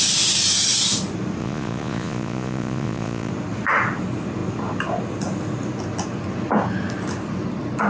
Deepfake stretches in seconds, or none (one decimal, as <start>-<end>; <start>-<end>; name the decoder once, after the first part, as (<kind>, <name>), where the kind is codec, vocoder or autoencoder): 1.4-3.3 (vocoder, Vocos)